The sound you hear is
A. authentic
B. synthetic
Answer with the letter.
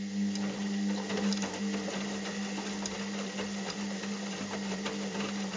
A